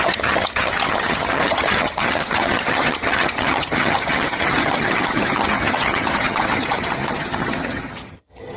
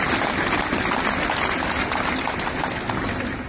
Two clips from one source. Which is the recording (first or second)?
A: second